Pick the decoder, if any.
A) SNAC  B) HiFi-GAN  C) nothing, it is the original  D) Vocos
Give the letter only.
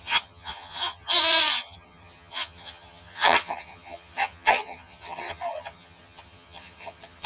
B